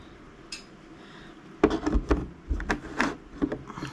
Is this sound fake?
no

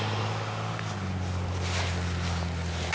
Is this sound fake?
no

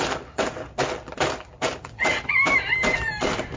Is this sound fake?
yes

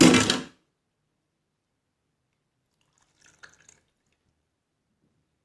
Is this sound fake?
no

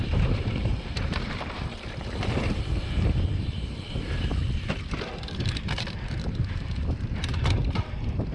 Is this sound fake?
yes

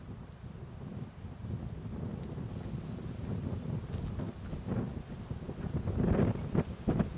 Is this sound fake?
no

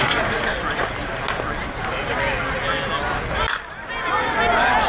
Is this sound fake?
no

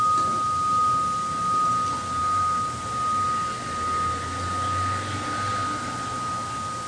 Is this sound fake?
no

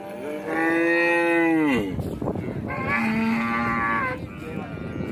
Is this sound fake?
no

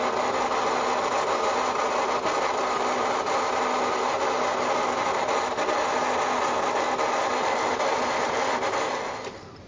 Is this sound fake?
no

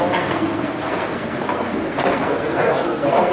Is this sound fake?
yes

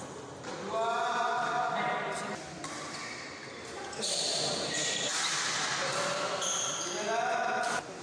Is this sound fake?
no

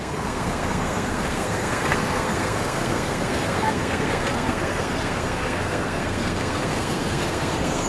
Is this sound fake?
yes